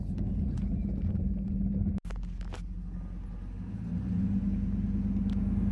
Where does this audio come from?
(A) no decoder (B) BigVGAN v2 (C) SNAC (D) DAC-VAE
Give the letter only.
A